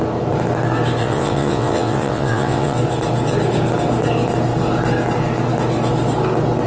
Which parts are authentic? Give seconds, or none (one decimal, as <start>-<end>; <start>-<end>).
0.0-1.0; 2.8-6.7